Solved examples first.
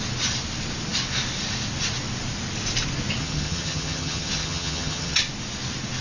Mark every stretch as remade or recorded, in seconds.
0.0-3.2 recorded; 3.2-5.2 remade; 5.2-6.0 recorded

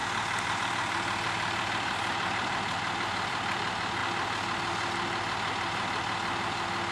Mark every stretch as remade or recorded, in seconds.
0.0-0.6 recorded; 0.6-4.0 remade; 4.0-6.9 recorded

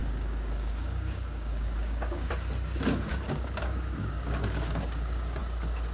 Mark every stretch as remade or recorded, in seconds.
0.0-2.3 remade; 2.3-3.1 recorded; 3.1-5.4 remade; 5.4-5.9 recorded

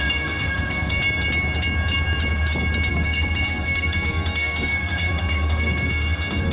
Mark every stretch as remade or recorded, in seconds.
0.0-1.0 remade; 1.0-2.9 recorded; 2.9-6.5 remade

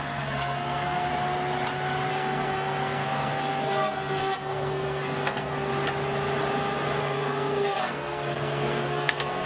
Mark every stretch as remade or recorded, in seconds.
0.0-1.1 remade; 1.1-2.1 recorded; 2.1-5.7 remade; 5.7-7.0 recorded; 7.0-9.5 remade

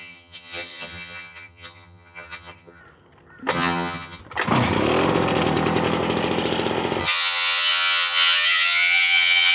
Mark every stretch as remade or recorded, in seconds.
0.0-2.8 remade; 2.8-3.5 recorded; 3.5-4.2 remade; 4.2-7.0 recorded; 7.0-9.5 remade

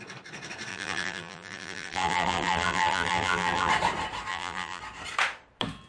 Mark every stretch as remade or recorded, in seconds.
0.0-0.7 recorded; 0.7-3.7 remade; 3.7-4.3 recorded; 4.3-4.8 remade; 4.8-5.9 recorded

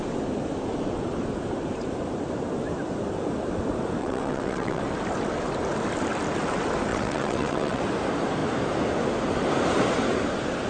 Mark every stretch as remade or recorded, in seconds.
0.0-4.0 recorded; 4.0-4.8 remade; 4.8-6.9 recorded; 6.9-7.8 remade; 7.8-10.7 recorded